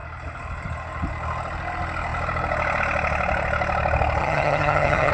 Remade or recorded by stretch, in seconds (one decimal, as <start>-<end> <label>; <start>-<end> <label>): 0.0-4.2 recorded; 4.2-5.1 remade